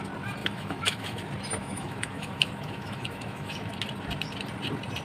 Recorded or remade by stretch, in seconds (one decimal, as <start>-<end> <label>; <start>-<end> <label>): 0.0-0.4 recorded; 0.4-1.2 remade; 1.2-1.6 recorded; 1.6-3.7 remade; 3.7-5.0 recorded